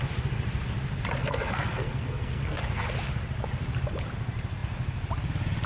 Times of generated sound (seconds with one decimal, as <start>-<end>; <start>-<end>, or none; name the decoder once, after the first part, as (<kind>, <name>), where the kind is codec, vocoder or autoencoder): 1.2-2.9 (codec, SNAC)